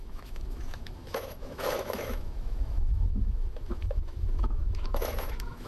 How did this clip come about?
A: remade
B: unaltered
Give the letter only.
A